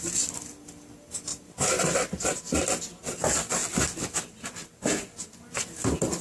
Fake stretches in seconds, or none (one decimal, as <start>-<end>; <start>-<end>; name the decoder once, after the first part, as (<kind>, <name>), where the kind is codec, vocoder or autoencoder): 1.3-2.4 (vocoder, BigVGAN v2)